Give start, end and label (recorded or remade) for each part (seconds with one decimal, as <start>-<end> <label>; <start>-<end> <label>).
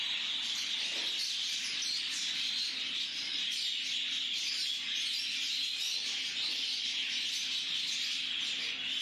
0.0-3.3 recorded; 3.3-4.4 remade; 4.4-9.0 recorded